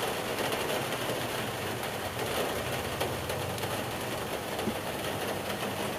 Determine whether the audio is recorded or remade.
recorded